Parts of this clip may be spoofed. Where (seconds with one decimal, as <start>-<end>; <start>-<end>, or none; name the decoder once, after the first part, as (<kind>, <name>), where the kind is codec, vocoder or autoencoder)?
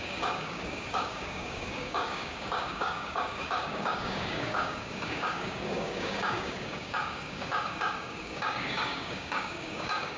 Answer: 0.0-10.2 (codec, DAC)